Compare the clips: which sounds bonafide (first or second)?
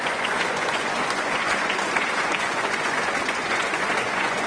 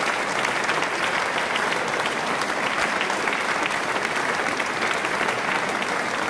second